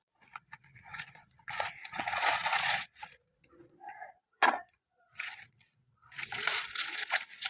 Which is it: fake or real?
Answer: fake